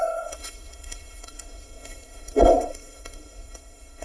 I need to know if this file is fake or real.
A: fake